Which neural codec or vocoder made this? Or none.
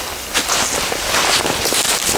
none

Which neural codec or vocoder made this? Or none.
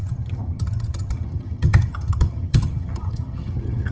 vocoder, HiFi-GAN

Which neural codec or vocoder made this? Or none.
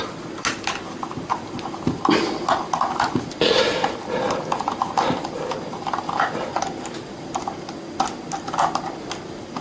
none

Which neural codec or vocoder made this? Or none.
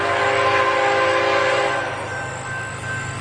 none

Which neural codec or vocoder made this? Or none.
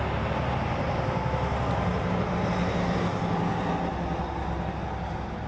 none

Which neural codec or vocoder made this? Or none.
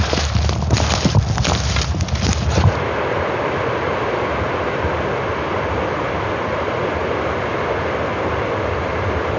none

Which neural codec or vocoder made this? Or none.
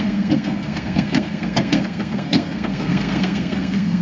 codec, SNAC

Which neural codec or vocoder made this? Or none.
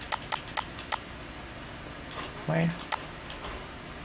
none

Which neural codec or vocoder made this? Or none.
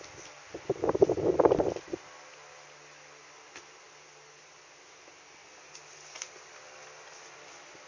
none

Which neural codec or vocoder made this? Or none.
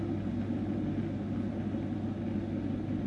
none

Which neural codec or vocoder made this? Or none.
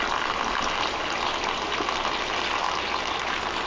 none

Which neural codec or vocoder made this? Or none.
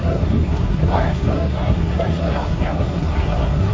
codec, SNAC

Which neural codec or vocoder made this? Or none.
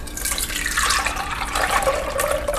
vocoder, BigVGAN v2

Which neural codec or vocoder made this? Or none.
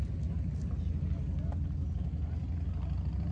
none